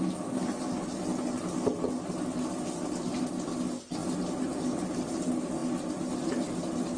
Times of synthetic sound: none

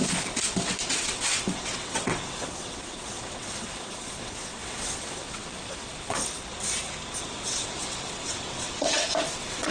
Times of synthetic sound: 0.8-6.2 (vocoder, WaveNeXt); 7.2-9.7

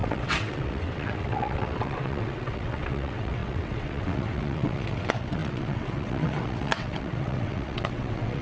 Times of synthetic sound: 0.0-8.4 (vocoder, WaveNeXt)